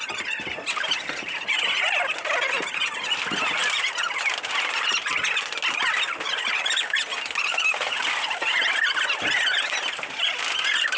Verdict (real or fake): real